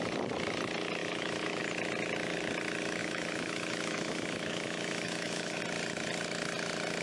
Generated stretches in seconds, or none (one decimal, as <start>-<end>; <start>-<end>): 1.0-1.6; 3.0-5.6